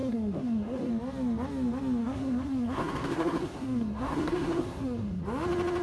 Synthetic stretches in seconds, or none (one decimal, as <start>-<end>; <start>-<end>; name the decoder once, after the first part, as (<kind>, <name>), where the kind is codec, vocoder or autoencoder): 0.0-0.9 (codec, SNAC); 2.0-5.2